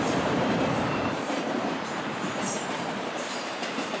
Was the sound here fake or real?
fake